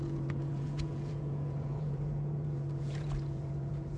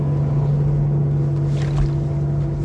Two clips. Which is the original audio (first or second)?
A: second